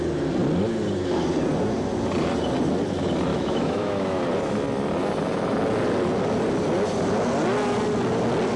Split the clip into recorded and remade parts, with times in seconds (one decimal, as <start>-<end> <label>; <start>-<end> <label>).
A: 0.0-3.3 recorded; 3.3-4.2 remade; 4.2-8.6 recorded